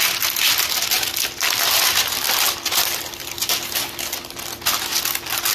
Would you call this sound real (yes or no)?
yes